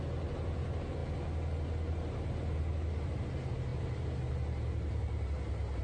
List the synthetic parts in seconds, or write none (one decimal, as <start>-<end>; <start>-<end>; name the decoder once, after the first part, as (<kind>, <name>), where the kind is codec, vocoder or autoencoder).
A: none